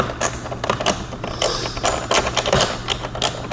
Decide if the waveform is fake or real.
real